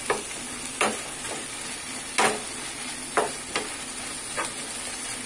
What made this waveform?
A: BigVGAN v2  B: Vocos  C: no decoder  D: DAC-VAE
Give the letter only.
C